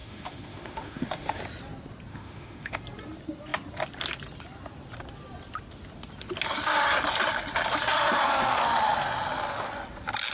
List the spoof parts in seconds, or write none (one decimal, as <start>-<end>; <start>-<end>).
0.0-1.4; 2.1-2.8